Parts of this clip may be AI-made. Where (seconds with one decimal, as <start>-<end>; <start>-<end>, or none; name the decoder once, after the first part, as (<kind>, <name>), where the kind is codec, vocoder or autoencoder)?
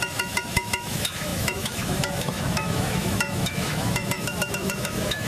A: 0.0-5.3 (autoencoder, DAC-VAE)